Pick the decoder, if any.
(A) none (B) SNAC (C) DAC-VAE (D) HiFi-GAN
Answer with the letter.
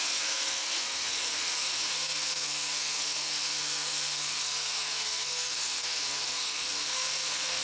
B